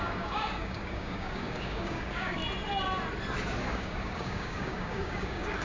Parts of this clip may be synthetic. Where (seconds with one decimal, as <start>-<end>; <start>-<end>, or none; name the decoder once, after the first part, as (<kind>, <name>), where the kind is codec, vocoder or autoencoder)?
0.0-2.4 (codec, DAC); 3.6-5.6

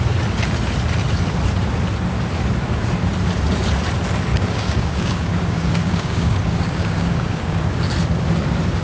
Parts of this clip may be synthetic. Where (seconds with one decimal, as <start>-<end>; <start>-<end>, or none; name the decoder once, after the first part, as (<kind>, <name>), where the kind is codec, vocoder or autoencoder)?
4.3-7.6 (codec, DAC)

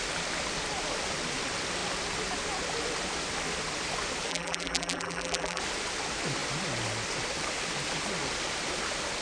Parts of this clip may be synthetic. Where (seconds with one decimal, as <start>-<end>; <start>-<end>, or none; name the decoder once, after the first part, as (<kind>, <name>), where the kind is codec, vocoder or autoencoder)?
4.3-5.6 (vocoder, BigVGAN v2)